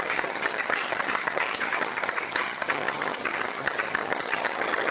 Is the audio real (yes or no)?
no